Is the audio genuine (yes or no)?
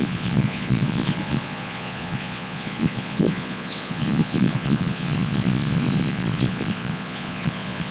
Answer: no